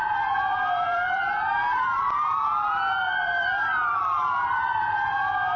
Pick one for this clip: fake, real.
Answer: fake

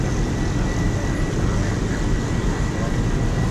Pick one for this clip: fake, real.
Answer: real